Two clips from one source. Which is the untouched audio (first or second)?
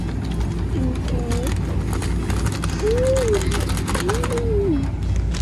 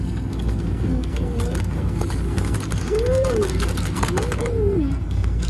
first